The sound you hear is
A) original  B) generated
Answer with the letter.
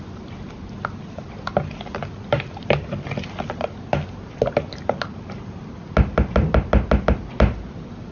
A